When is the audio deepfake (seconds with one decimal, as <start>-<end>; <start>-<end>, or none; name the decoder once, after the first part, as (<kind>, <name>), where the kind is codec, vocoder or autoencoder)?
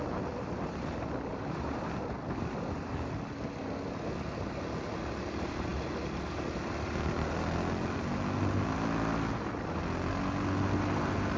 1.3-2.0 (vocoder, BigVGAN v2)